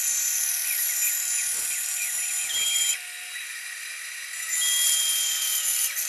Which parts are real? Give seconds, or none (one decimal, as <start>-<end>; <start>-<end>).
0.0-6.1